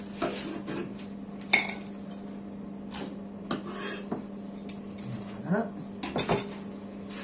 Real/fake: real